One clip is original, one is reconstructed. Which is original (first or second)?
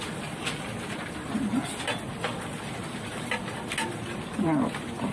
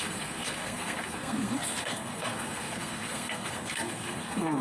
first